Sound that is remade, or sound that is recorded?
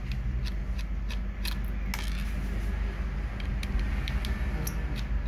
recorded